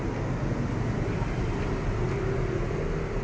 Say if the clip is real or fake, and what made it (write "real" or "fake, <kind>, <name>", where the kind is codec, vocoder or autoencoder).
real